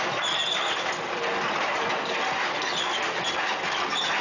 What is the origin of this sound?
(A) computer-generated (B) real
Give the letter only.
B